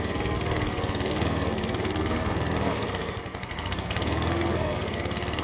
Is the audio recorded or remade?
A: remade